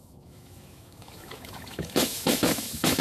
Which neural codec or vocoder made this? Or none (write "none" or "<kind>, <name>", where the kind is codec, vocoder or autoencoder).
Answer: autoencoder, DAC-VAE